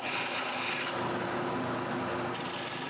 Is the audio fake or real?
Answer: real